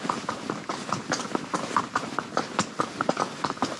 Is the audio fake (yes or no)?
no